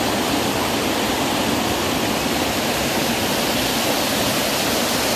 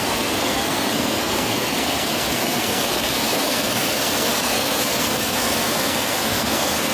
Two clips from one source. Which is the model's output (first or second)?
second